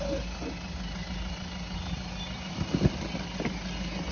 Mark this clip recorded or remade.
recorded